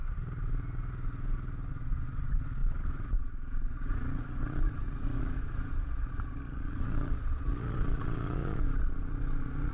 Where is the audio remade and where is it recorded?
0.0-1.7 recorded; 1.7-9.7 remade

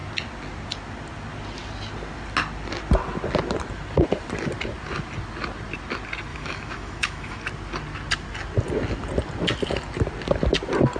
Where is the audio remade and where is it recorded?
0.0-6.3 recorded; 6.3-7.4 remade; 7.4-11.0 recorded

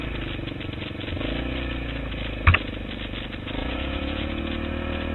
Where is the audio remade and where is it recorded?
0.0-3.6 recorded; 3.6-4.4 remade; 4.4-5.1 recorded

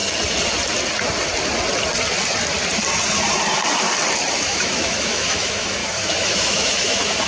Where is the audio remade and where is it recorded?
0.0-4.3 recorded; 4.3-7.3 remade

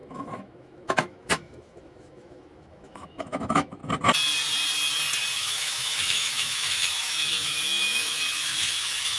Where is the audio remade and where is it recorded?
0.0-3.8 remade; 3.8-5.3 recorded; 5.3-9.2 remade